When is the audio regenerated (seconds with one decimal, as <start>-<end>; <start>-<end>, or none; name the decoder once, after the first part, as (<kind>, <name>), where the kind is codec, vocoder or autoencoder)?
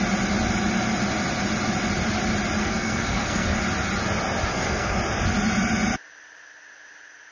2.6-3.6 (codec, SNAC); 4.5-5.0